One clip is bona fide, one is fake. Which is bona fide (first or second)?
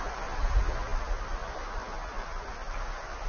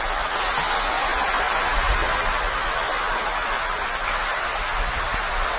second